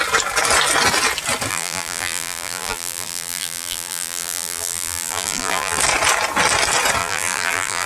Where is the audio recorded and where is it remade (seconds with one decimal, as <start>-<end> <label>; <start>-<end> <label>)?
0.0-1.5 recorded; 1.5-5.8 remade; 5.8-7.0 recorded; 7.0-7.9 remade